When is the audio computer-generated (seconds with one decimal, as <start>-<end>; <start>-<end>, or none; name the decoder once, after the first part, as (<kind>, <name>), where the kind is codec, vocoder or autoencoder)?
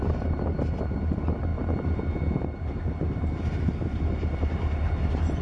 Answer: 0.0-5.4 (vocoder, BigVGAN v2)